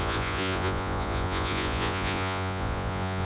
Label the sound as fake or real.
fake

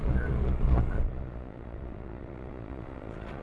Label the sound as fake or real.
fake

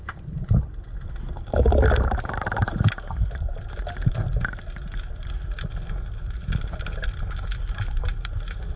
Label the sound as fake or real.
real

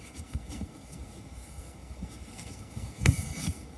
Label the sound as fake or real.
fake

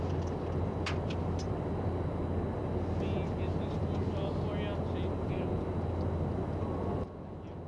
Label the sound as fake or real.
real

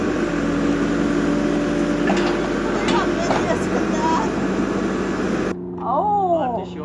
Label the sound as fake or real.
real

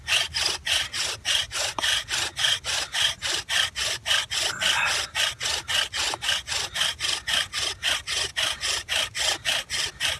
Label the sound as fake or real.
real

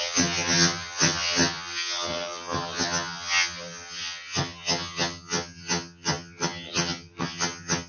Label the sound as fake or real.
fake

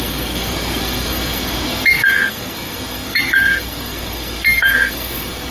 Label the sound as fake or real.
fake